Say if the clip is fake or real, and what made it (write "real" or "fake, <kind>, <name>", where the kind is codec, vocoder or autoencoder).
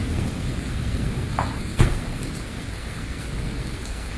fake, codec, SNAC